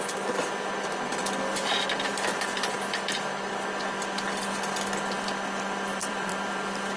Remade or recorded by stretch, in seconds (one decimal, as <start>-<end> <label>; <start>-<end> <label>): 0.0-5.9 recorded; 5.9-6.6 remade; 6.6-7.0 recorded